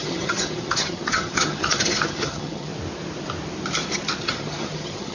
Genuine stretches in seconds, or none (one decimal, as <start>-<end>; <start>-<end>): 2.7-4.2